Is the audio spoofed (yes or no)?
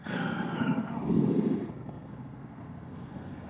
yes